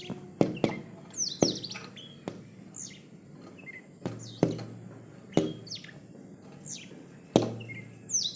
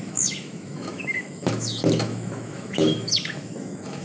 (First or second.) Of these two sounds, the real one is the first